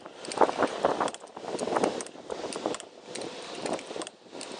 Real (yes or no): yes